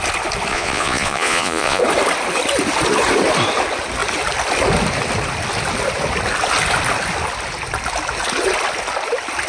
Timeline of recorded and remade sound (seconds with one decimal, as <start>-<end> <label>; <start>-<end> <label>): 0.0-0.5 recorded; 0.5-1.8 remade; 1.8-9.5 recorded